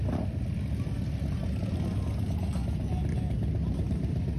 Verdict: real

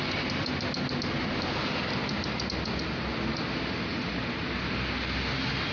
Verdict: real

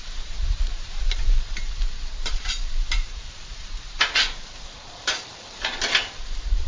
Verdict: fake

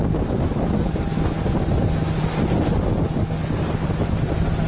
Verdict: real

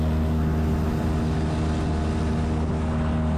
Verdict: real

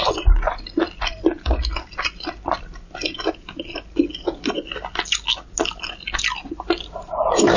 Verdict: real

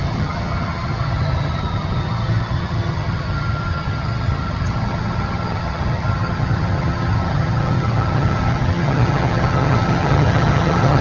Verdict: fake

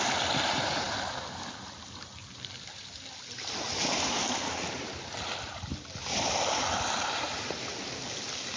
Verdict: real